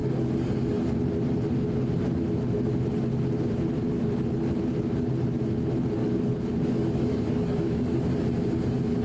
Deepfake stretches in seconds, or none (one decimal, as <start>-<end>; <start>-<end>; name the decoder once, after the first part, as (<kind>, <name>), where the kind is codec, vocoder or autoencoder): 0.0-0.7 (codec, DAC); 6.0-8.0